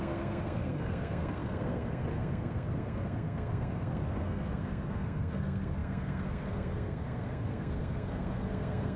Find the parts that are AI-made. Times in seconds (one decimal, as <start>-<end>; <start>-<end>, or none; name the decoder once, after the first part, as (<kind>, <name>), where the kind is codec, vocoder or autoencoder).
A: 0.0-9.0 (codec, SNAC)